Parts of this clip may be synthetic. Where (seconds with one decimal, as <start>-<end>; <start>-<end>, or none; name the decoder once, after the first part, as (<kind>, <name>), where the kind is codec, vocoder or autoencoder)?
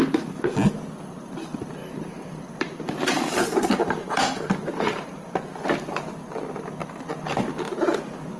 1.8-5.4 (vocoder, BigVGAN v2)